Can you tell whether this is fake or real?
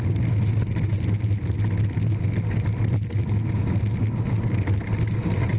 real